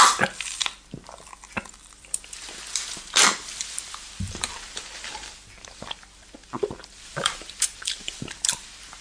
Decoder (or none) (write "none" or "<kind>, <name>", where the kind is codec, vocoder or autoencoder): vocoder, BigVGAN v2